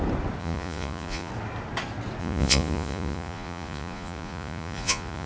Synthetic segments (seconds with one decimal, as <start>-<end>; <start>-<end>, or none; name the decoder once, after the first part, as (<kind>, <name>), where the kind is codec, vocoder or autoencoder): 0.4-1.3 (vocoder, Vocos); 2.2-5.3